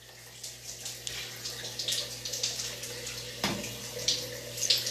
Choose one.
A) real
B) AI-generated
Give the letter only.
A